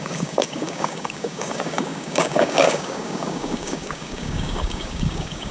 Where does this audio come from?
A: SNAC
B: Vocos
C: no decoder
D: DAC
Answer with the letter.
D